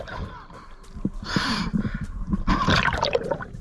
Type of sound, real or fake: fake